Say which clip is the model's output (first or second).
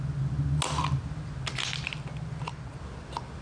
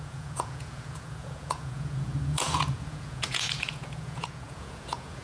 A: second